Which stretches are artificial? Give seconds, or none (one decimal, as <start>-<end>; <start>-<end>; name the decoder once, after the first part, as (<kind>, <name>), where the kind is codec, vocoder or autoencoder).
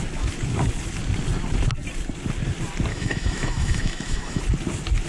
2.9-4.4 (autoencoder, DAC-VAE)